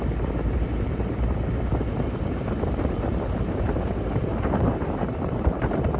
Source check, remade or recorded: remade